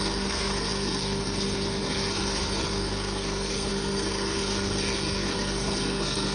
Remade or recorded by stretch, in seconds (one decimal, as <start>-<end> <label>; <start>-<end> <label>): 0.0-6.3 remade